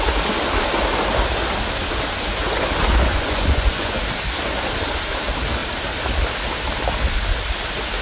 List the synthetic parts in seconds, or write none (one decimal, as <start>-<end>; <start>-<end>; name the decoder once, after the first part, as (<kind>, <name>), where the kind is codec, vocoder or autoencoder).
3.1-4.0 (vocoder, Vocos)